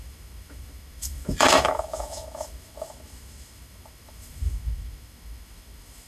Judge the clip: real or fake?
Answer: fake